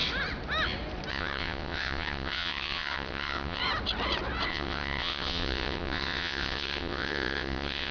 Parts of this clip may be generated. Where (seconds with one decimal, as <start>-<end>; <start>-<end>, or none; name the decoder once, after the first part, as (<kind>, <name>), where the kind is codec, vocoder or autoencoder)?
1.1-3.6 (vocoder, WaveNeXt); 4.5-7.9